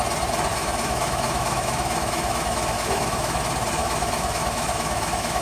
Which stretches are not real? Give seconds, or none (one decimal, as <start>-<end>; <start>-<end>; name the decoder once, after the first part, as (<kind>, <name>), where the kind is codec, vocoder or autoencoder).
0.5-3.4 (autoencoder, DAC-VAE); 3.8-5.4